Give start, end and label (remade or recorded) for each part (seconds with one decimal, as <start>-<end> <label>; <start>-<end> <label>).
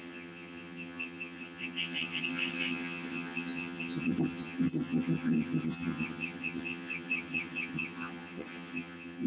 0.0-9.3 remade